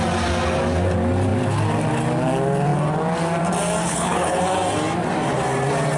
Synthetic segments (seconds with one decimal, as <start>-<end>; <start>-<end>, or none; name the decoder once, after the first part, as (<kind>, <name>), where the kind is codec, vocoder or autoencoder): 3.8-4.4 (codec, HILCodec)